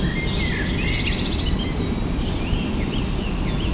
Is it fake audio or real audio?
real